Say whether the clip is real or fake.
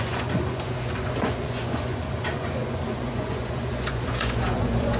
fake